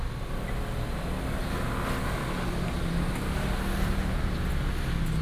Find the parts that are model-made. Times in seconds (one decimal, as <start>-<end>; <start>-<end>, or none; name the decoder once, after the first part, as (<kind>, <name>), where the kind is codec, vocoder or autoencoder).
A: none